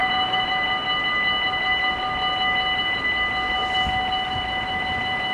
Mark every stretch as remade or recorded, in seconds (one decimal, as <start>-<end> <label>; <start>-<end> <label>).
0.0-0.5 remade; 0.5-5.3 recorded